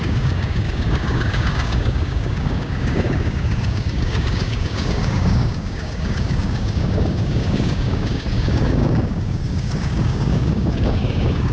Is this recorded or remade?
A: remade